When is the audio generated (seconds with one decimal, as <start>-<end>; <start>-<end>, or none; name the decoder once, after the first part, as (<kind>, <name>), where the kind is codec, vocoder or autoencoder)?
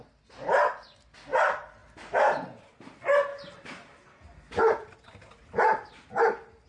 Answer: none